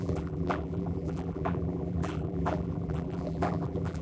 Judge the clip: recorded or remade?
remade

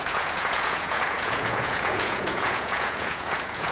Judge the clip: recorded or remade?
remade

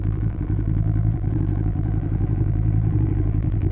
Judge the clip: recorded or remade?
remade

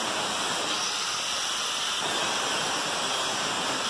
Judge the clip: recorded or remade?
recorded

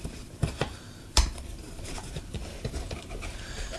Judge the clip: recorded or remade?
remade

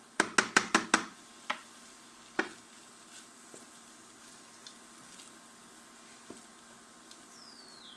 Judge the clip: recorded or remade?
recorded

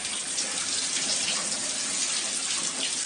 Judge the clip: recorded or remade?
recorded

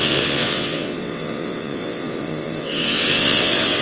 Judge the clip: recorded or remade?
remade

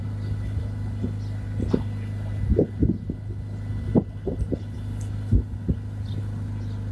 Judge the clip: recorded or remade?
recorded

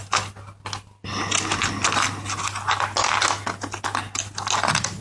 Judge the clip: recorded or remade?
recorded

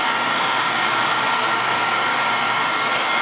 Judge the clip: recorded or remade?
remade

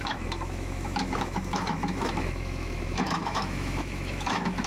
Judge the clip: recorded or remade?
remade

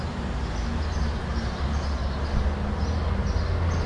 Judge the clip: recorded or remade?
recorded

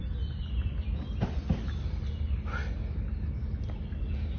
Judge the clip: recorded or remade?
recorded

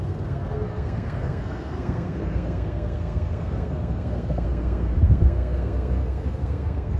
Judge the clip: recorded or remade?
remade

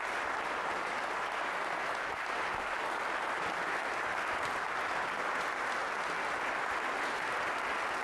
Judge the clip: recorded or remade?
recorded